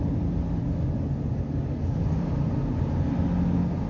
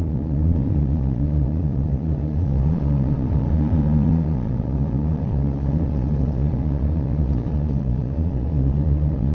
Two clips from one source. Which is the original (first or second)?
first